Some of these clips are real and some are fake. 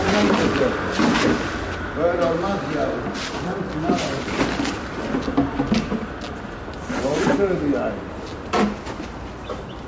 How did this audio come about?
real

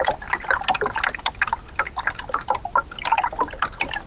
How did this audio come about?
real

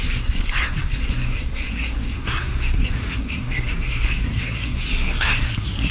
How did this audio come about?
fake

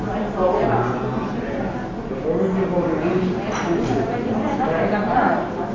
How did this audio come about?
real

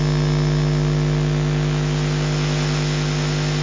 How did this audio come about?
real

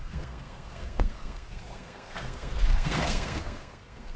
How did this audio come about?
fake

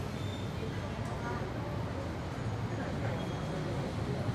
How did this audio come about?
real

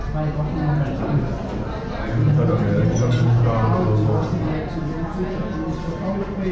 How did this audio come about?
real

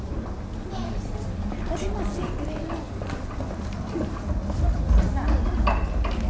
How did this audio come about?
real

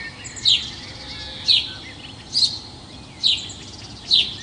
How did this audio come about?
real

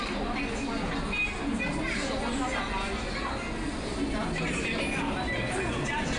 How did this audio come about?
real